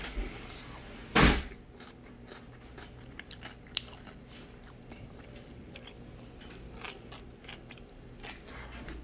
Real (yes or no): yes